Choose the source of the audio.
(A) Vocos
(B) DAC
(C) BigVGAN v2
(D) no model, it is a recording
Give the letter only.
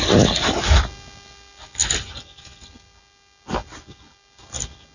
D